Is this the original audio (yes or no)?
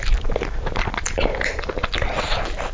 yes